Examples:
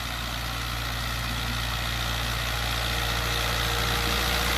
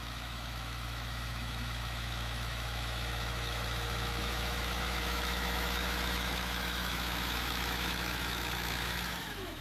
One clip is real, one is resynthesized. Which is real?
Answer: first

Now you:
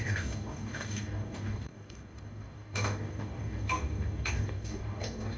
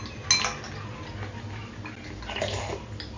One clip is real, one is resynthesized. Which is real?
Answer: second